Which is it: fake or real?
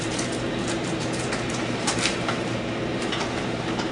fake